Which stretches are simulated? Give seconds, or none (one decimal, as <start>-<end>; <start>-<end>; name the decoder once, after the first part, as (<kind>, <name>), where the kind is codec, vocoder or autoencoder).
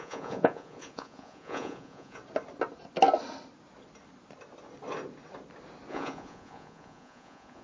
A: 0.0-2.2 (vocoder, Vocos); 5.9-7.6